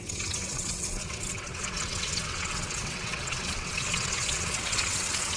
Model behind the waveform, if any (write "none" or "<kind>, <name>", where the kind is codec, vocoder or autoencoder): vocoder, WaveNeXt